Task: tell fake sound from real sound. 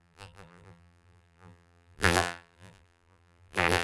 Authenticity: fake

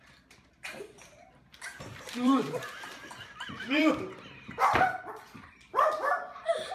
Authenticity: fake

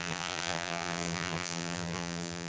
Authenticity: fake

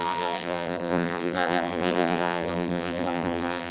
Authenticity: fake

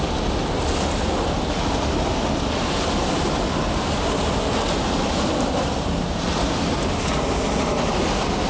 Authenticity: real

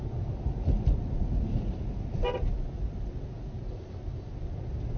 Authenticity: real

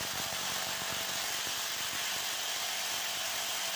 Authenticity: fake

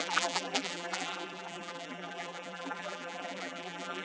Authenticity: fake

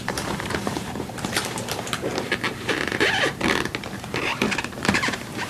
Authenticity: fake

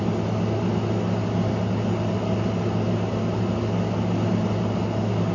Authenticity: real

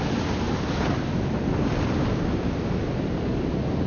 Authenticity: real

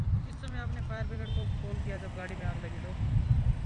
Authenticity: fake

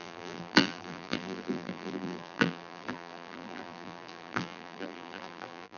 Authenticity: fake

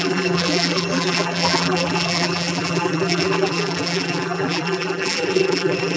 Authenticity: fake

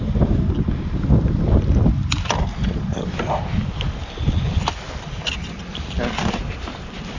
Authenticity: real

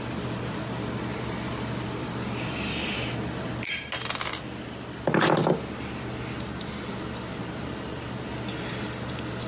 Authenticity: real